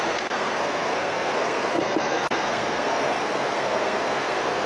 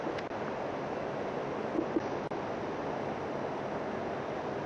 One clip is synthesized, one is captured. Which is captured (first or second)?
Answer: second